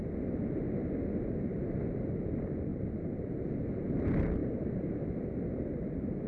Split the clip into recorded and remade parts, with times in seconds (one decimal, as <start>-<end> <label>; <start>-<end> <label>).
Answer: 0.0-4.4 recorded; 4.4-5.4 remade; 5.4-6.3 recorded